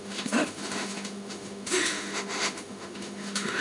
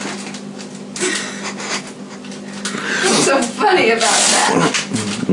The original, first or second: second